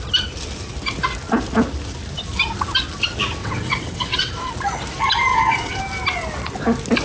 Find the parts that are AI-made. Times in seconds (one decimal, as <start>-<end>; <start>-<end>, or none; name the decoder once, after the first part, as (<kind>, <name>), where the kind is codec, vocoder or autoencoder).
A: 3.4-4.5 (vocoder, WaveNeXt); 5.3-5.8